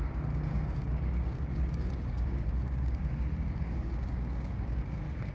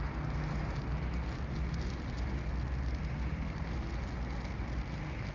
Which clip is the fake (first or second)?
first